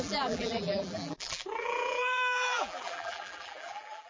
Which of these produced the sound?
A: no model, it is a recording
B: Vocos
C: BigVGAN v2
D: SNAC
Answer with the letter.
C